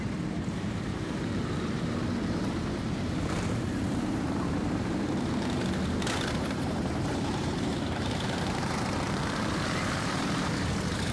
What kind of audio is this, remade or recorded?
remade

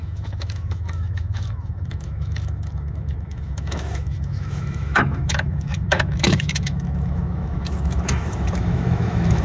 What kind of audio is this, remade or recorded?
remade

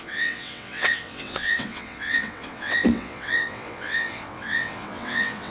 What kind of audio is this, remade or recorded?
remade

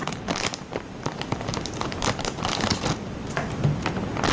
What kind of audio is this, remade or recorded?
recorded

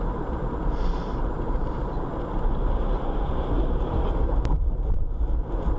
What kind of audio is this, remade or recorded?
remade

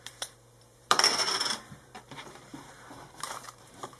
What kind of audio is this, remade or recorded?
remade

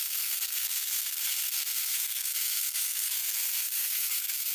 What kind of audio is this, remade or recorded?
remade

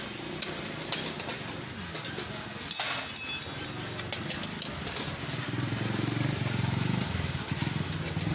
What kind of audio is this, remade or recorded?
recorded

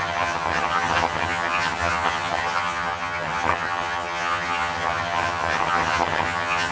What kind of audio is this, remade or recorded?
remade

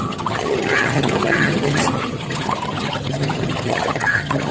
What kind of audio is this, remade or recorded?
remade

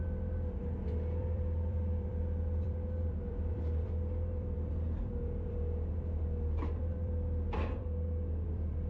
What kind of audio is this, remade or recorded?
remade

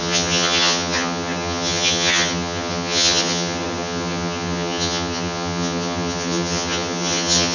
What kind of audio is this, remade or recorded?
remade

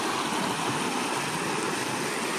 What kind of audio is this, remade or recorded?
recorded